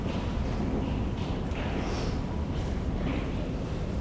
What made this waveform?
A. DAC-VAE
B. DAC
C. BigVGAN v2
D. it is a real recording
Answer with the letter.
D